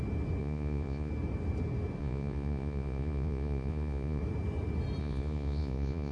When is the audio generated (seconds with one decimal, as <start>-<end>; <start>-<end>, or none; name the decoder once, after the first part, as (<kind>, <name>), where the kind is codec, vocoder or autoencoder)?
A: 0.4-1.1 (vocoder, Vocos); 2.0-4.2; 5.0-6.1